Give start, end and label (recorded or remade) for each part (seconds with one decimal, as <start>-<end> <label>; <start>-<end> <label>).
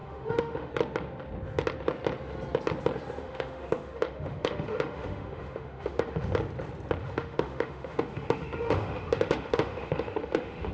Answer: 0.0-0.7 remade; 0.7-3.2 recorded; 3.2-6.3 remade; 6.3-7.0 recorded; 7.0-10.7 remade